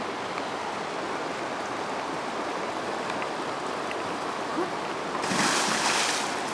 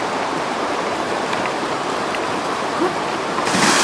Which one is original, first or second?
first